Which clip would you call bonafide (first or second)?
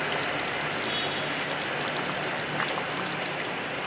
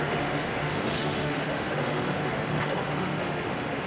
first